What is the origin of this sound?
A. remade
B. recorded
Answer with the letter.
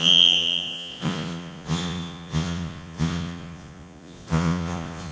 A